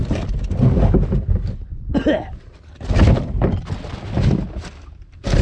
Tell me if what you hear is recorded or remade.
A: recorded